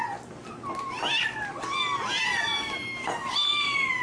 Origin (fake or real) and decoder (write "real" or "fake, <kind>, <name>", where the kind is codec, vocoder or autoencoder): real